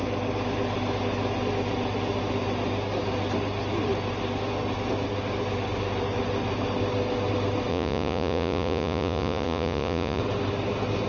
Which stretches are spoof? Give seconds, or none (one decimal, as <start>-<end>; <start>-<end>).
7.7-10.2